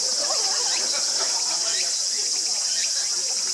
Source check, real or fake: real